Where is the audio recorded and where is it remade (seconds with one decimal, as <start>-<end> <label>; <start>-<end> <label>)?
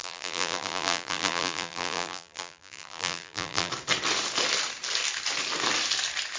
0.0-3.7 remade; 3.7-6.4 recorded